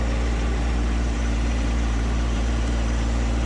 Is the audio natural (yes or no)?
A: no